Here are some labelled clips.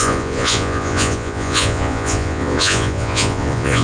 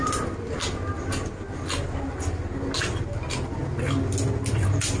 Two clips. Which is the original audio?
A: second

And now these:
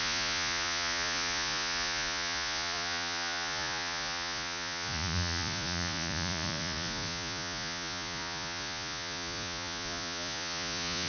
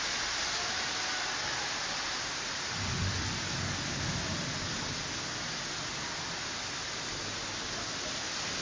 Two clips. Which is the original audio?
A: second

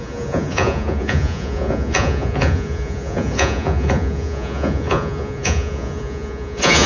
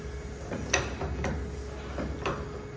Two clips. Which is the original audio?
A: second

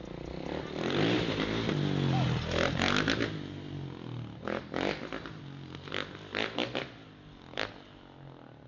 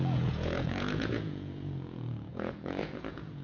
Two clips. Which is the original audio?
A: first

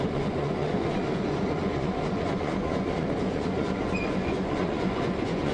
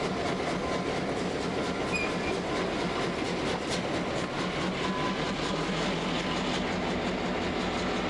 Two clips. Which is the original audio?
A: second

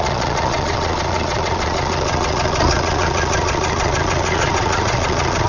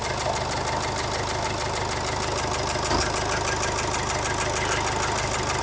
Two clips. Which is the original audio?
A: second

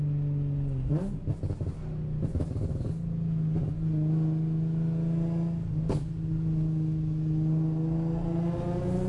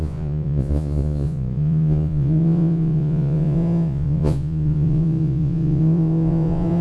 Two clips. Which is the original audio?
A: first